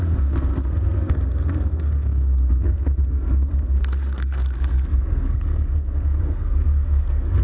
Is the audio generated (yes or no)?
yes